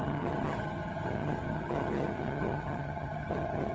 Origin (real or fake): fake